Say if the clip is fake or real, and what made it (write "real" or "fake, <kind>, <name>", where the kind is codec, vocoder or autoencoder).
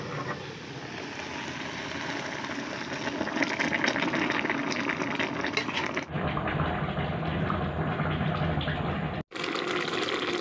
real